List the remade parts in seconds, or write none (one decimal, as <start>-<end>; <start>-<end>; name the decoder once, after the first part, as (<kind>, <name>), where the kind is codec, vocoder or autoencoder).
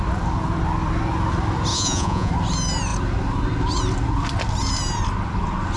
1.7-2.3 (vocoder, Vocos)